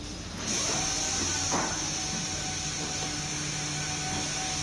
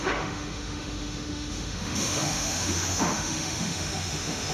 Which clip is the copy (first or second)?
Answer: second